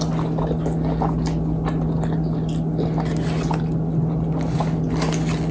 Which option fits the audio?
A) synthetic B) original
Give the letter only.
B